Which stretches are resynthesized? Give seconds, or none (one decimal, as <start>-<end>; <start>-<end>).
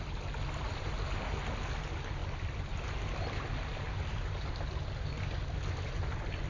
none